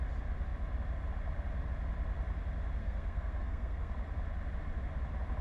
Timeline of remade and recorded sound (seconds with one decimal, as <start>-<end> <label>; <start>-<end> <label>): 0.0-2.8 recorded; 2.8-3.9 remade; 3.9-5.4 recorded